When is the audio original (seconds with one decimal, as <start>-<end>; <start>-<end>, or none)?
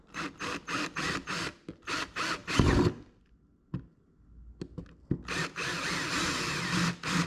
0.0-7.3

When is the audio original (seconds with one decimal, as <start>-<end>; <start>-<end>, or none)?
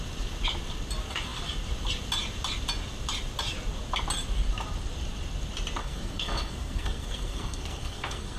0.0-5.8